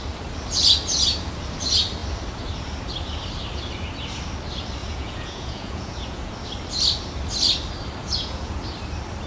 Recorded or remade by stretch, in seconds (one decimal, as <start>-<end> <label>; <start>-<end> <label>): 0.0-4.8 recorded; 4.8-6.3 remade; 6.3-8.0 recorded; 8.0-8.6 remade; 8.6-9.3 recorded